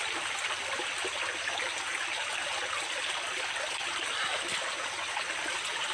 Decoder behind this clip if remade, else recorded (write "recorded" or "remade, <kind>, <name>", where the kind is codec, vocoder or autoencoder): recorded